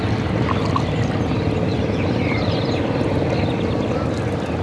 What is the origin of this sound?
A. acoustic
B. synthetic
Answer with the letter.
A